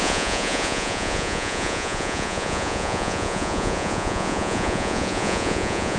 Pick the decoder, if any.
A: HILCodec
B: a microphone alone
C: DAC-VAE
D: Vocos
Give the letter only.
D